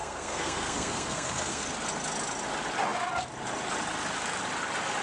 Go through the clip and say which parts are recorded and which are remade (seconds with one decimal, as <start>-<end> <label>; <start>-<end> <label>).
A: 0.0-1.6 remade; 1.6-5.0 recorded